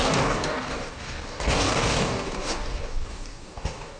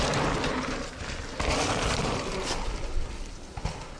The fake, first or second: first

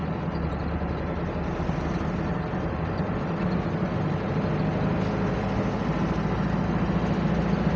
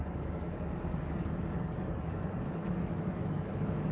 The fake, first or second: second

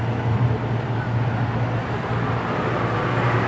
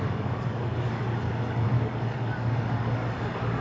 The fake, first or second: second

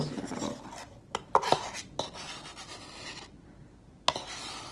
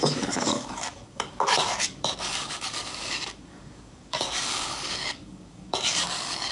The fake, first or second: second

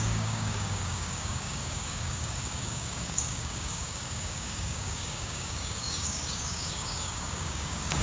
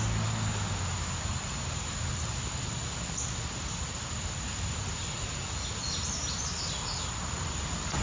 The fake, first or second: first